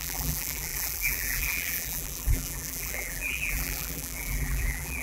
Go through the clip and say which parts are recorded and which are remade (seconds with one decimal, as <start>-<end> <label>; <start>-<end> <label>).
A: 0.0-5.0 remade